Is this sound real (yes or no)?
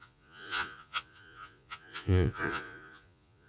no